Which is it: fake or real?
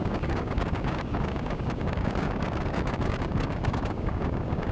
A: fake